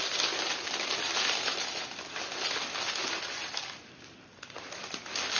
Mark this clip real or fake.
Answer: real